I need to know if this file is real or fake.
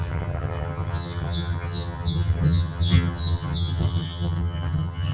fake